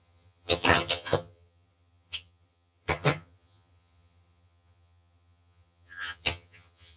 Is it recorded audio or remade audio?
remade